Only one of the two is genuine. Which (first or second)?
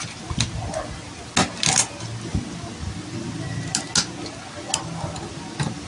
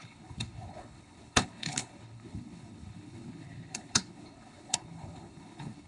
first